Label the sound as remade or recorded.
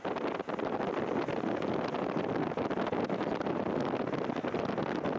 recorded